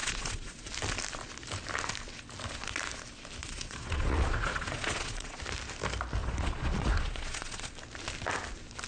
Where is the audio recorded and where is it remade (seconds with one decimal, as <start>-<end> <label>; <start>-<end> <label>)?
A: 0.0-0.7 remade; 0.7-3.4 recorded; 3.4-5.4 remade; 5.4-6.2 recorded; 6.2-7.7 remade; 7.7-8.9 recorded